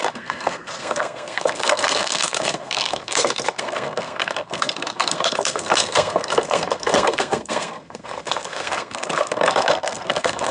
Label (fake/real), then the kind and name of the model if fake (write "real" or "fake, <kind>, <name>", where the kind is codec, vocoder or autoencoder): fake, codec, SNAC